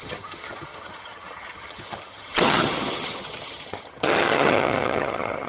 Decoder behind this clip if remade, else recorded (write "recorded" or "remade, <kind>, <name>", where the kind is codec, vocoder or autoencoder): remade, vocoder, HiFi-GAN